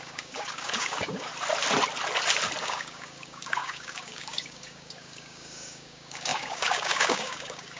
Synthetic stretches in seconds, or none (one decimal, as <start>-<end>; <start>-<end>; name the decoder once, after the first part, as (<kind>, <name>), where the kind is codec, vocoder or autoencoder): 0.0-1.3 (codec, DAC); 2.6-7.8